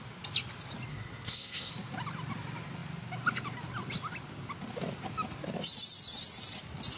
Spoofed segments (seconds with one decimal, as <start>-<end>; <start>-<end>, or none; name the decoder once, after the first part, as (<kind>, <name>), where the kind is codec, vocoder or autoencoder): 0.9-1.7 (codec, SNAC)